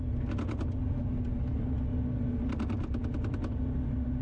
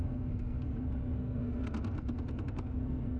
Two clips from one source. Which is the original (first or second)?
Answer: first